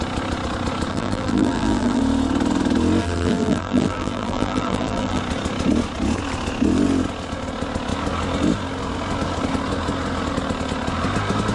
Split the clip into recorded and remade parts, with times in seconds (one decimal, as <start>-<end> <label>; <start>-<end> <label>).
0.0-0.9 recorded; 0.9-2.0 remade; 2.0-3.0 recorded; 3.0-5.2 remade; 5.2-11.5 recorded